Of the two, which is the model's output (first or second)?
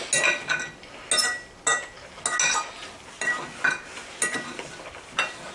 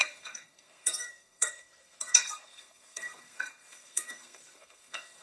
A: second